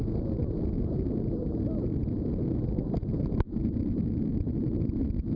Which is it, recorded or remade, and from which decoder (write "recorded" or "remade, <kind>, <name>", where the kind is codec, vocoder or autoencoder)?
recorded